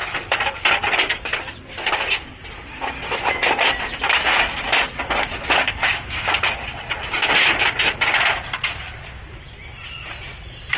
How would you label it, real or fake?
real